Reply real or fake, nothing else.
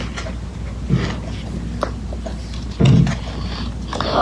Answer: real